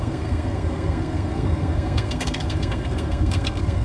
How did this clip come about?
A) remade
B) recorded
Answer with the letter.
A